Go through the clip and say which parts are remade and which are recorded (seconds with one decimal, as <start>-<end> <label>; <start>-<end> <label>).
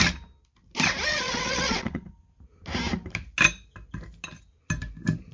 0.0-1.1 recorded; 1.1-2.1 remade; 2.1-5.3 recorded